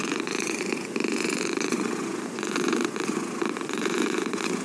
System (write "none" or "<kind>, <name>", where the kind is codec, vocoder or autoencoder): vocoder, Vocos